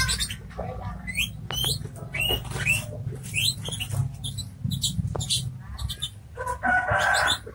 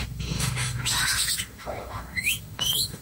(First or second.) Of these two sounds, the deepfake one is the second